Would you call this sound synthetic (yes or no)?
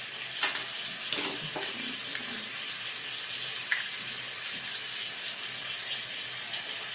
no